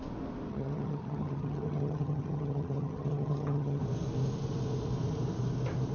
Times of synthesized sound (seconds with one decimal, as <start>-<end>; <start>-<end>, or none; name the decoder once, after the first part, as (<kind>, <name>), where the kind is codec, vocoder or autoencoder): 0.5-3.8 (vocoder, HiFi-GAN)